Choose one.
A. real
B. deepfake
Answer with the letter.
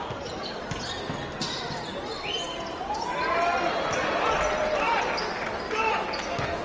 A